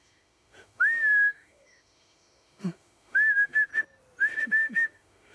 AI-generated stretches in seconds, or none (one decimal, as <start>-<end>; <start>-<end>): 0.0-3.7; 4.4-5.3